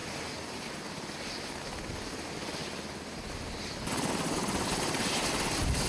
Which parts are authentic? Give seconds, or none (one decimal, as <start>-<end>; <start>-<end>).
0.0-5.9